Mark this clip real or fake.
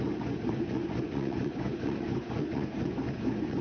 fake